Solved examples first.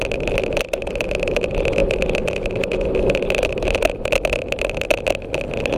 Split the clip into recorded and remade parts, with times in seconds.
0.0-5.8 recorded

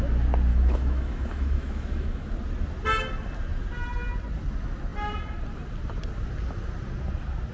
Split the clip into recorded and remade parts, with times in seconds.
0.0-0.5 recorded; 0.5-2.3 remade; 2.3-7.5 recorded

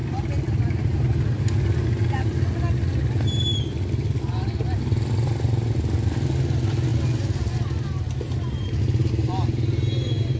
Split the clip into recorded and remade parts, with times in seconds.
0.0-10.4 recorded

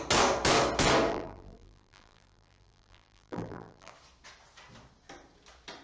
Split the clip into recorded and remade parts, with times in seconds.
0.0-1.1 recorded; 1.1-3.9 remade; 3.9-5.8 recorded